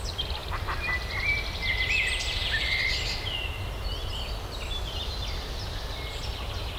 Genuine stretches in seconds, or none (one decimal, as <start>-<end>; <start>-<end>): 0.0-6.8